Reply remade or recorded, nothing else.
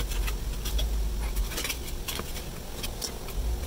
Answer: recorded